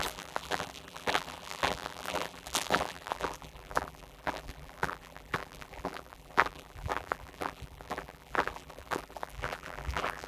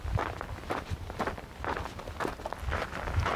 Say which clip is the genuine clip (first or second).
second